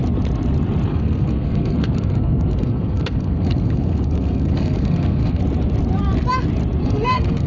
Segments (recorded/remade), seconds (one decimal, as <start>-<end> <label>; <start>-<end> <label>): 0.0-0.9 recorded; 0.9-5.4 remade; 5.4-6.8 recorded; 6.8-7.5 remade